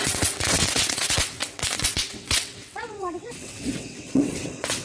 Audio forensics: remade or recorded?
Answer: remade